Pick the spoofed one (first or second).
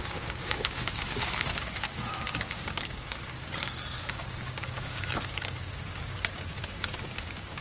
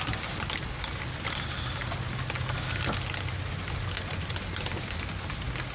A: first